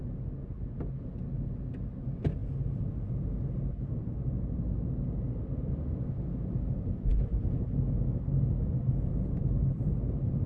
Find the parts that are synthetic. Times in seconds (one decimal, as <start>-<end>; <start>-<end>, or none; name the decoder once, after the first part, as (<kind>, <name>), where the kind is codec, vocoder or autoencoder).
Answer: none